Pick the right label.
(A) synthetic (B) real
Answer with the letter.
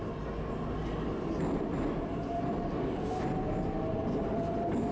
B